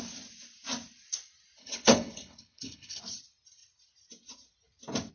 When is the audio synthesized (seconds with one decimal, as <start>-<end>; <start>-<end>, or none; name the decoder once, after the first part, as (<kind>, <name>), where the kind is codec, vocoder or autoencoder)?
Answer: 1.6-3.0 (codec, HILCodec)